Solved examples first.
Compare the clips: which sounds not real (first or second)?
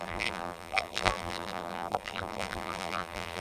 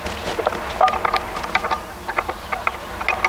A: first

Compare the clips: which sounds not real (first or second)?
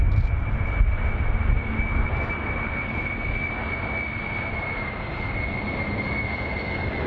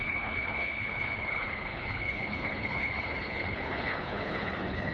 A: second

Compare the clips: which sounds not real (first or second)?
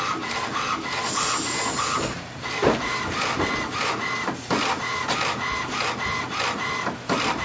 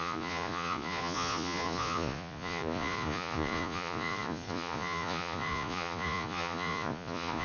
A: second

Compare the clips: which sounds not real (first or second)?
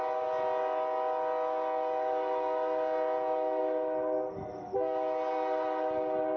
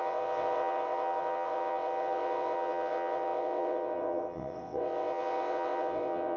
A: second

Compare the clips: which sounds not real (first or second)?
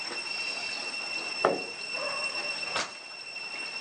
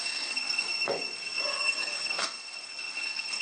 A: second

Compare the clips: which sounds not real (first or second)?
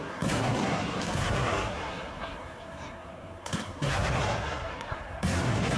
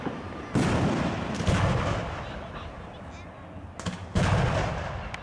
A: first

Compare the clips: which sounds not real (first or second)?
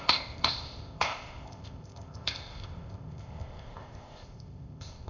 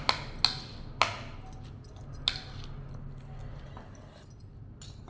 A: first